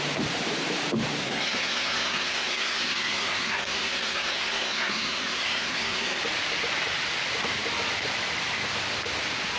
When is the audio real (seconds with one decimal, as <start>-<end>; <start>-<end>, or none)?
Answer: 0.0-1.2; 6.2-9.6